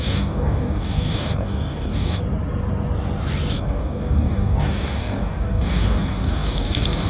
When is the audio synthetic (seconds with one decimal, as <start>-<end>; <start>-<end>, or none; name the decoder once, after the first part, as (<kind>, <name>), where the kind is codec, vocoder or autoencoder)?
0.0-2.2 (codec, DAC); 3.5-7.1